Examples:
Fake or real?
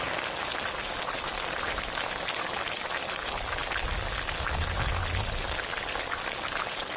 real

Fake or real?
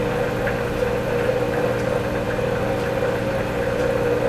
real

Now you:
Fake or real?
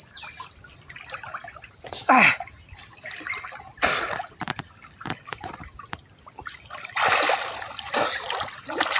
real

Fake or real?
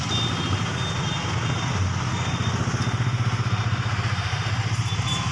real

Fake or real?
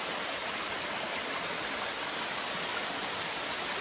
real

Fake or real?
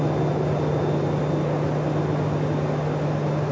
real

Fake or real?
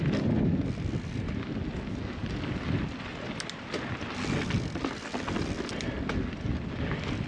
real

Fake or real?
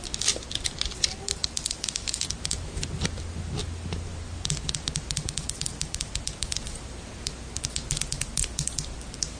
real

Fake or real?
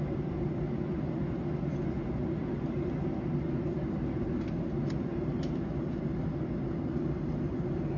real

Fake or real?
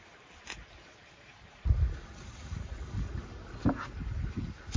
real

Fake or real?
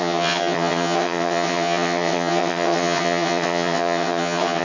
fake